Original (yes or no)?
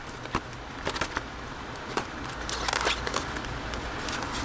yes